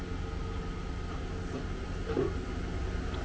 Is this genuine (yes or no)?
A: yes